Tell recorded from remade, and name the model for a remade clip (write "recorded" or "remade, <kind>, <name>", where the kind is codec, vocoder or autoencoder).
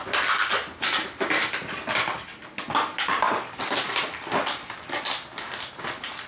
recorded